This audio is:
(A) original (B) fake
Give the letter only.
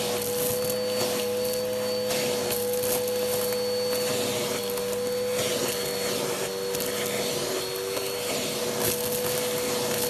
A